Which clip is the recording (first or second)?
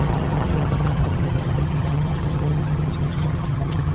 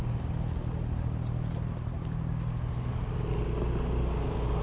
second